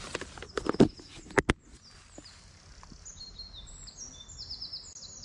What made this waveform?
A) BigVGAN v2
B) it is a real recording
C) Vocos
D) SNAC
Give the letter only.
B